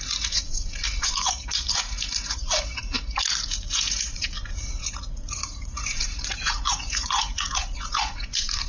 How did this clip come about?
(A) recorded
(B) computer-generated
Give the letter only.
B